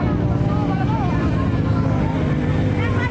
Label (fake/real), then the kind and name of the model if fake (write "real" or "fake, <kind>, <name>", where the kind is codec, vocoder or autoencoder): real